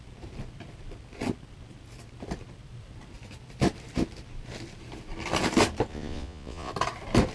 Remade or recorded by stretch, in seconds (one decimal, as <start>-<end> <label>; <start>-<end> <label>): 0.0-5.9 recorded; 5.9-6.7 remade; 6.7-7.3 recorded